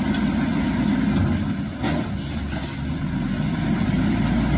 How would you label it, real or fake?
real